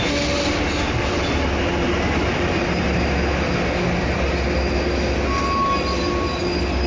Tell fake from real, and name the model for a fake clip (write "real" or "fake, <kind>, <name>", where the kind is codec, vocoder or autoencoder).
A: real